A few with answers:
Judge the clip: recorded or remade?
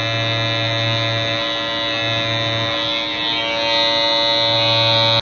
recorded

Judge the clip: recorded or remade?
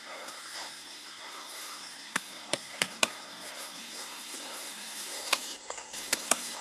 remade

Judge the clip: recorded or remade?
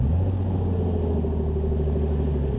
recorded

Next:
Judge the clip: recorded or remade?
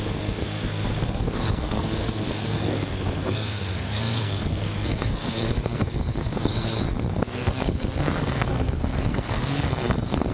remade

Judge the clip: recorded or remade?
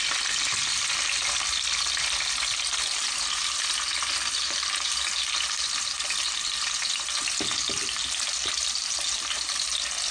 recorded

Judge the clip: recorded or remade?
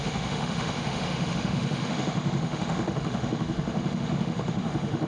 remade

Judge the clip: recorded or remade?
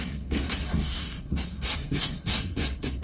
remade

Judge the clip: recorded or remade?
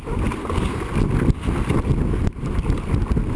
recorded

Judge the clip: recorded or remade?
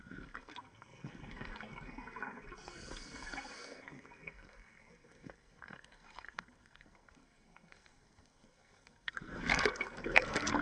remade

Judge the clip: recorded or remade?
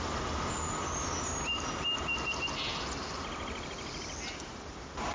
recorded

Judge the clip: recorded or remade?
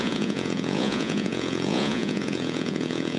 remade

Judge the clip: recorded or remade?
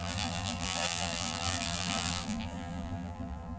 remade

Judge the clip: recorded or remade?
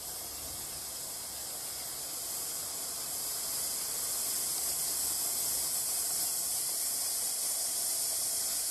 recorded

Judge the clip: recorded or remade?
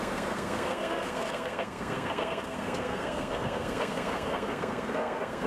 remade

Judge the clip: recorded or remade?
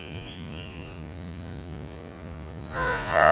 remade